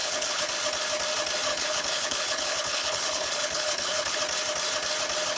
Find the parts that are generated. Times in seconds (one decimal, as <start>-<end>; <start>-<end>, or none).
0.0-0.5; 1.5-4.2